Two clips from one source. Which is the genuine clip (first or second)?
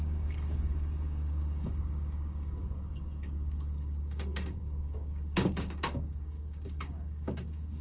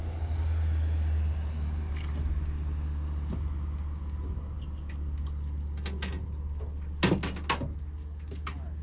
second